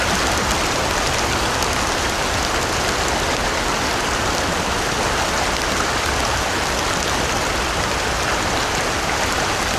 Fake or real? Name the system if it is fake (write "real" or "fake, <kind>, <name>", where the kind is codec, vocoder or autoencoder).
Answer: real